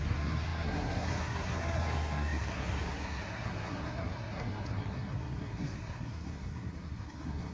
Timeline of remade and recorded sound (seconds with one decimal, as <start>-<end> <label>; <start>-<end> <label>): 0.0-7.5 remade